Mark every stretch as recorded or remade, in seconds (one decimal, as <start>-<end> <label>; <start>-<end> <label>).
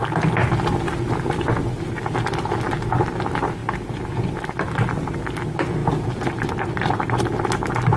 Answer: 0.0-8.0 recorded